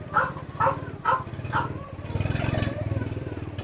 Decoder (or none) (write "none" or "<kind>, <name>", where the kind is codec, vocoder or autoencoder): vocoder, BigVGAN v2